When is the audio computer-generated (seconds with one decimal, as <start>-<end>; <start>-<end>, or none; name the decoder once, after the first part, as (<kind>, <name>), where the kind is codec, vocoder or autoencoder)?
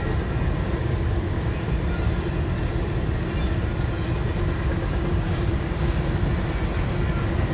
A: 0.8-1.5 (codec, DAC); 4.7-6.1